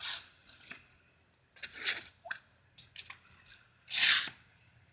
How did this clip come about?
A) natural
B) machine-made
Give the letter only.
A